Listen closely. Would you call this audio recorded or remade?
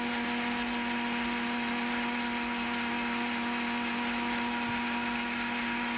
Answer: recorded